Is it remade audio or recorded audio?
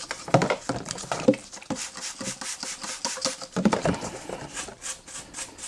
recorded